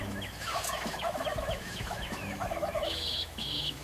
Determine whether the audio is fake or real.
fake